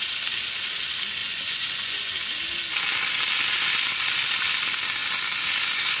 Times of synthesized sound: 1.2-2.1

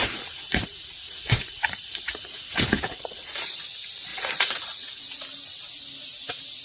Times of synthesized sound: 0.0-3.6; 4.1-5.0